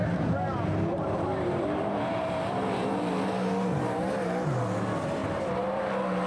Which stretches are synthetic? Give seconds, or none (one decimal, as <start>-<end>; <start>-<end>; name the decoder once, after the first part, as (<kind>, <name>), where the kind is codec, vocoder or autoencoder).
0.9-2.8 (vocoder, BigVGAN v2); 3.7-4.4; 5.2-5.8